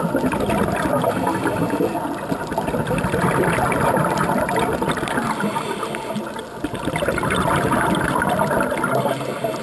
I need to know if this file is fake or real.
real